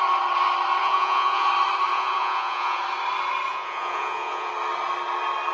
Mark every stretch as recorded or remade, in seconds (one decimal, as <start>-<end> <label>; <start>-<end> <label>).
0.0-0.8 recorded; 0.8-1.5 remade; 1.5-1.9 recorded; 1.9-2.8 remade; 2.8-3.5 recorded; 3.5-4.5 remade; 4.5-5.5 recorded